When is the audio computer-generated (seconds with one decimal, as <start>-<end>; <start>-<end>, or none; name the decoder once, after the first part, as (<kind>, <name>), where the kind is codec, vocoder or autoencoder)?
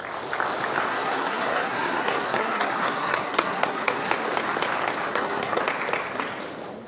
0.9-4.1 (codec, SNAC); 5.1-5.6